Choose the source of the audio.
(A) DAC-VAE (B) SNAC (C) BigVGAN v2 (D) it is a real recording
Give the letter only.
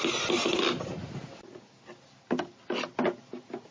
D